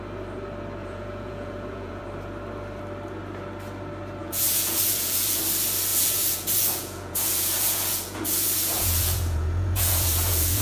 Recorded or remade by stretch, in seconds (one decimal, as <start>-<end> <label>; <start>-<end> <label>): 0.0-0.8 recorded; 0.8-2.0 remade; 2.0-4.2 recorded; 4.2-5.4 remade; 5.4-5.9 recorded; 5.9-10.6 remade